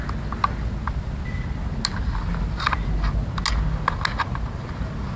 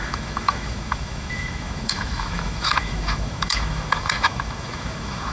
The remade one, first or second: second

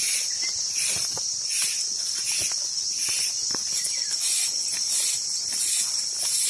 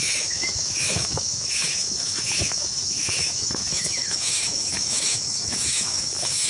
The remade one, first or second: second